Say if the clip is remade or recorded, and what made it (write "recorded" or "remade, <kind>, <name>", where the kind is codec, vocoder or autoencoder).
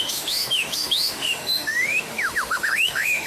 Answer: remade, autoencoder, DAC-VAE